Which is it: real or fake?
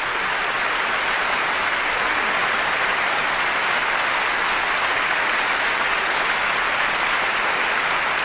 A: real